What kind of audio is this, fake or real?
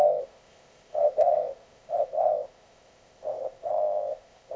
fake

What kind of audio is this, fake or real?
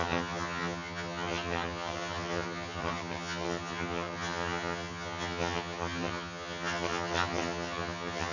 fake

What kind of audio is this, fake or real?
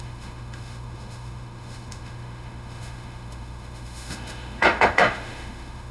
fake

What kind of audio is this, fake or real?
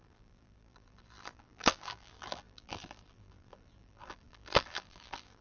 fake